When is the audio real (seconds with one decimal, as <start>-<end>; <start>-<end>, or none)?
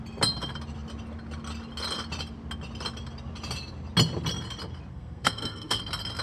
0.0-4.9; 5.8-6.2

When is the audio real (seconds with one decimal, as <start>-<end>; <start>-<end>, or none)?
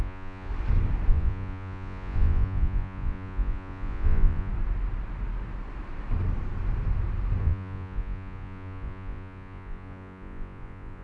0.5-1.1; 4.5-7.4